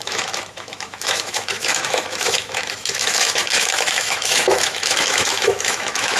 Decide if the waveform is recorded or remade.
remade